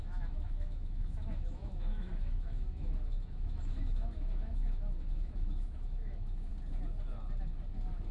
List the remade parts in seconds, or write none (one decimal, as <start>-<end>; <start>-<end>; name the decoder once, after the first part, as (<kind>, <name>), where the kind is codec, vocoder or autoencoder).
0.0-6.5 (autoencoder, DAC-VAE)